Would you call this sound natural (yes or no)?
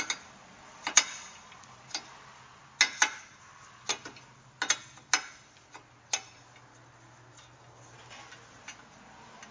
yes